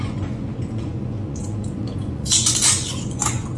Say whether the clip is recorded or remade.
remade